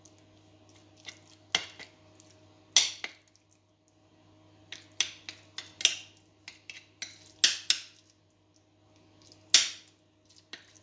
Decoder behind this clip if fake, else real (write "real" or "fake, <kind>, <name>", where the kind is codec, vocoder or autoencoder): real